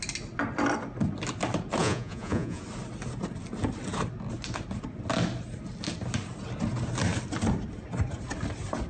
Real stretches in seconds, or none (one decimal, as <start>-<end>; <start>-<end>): 0.0-1.8; 2.6-8.9